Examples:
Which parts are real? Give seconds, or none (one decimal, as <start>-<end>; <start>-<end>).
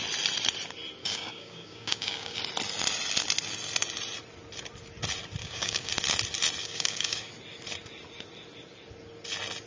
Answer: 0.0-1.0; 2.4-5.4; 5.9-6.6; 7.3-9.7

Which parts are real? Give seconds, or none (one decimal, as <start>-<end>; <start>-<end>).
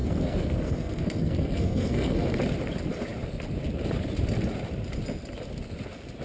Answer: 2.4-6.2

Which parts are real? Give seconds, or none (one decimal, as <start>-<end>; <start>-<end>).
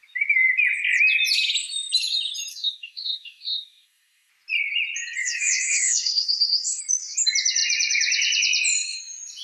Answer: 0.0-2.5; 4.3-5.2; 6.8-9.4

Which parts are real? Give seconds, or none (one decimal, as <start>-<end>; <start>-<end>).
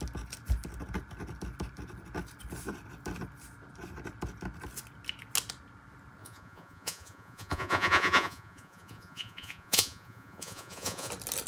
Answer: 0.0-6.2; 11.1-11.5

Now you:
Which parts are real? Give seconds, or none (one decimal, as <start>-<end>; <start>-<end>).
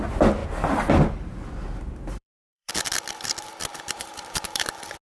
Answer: 0.0-2.0; 2.7-3.7; 4.6-5.1